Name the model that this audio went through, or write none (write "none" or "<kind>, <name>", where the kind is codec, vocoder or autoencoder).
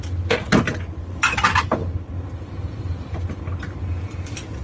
none